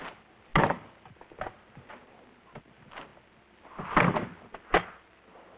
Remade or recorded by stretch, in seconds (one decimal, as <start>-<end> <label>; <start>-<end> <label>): 0.0-5.6 recorded